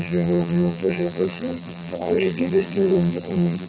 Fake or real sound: fake